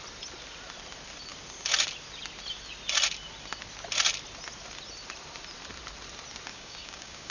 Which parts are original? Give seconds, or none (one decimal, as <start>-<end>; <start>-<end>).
0.0-6.5